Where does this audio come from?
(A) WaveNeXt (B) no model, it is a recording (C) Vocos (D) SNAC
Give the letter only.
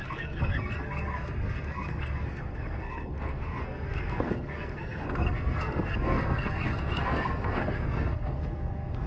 D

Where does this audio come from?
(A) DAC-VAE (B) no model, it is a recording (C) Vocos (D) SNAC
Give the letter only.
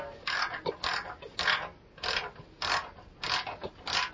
B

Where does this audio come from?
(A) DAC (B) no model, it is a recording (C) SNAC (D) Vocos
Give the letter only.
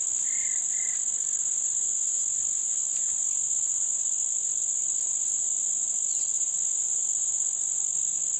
B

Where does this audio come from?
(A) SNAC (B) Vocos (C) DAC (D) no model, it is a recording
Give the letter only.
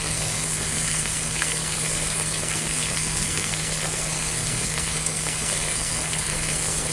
A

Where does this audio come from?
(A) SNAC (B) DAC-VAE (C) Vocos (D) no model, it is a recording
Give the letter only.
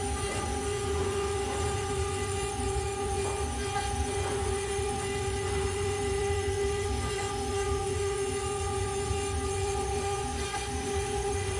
C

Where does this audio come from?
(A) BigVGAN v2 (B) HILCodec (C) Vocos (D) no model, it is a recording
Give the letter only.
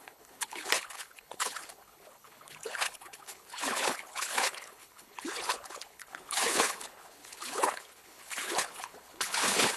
B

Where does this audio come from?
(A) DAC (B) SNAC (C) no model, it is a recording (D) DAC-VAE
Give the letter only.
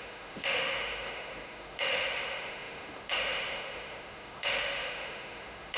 D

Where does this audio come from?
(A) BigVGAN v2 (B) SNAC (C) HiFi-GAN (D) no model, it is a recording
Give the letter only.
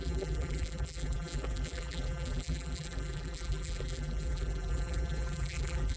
A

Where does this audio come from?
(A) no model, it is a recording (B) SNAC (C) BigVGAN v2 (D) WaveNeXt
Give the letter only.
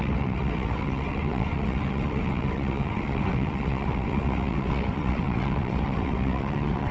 D